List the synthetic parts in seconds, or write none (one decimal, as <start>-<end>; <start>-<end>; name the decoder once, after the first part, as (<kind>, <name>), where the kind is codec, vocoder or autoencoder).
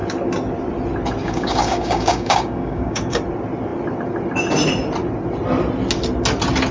1.2-3.2 (codec, DAC)